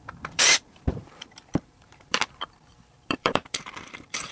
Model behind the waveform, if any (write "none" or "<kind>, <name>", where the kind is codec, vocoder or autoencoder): vocoder, BigVGAN v2